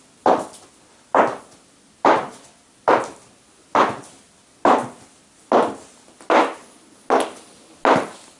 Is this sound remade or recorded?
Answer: recorded